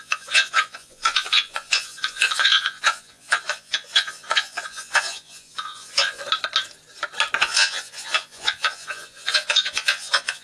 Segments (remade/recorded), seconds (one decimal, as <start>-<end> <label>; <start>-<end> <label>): 0.0-6.2 remade; 6.2-7.4 recorded; 7.4-10.4 remade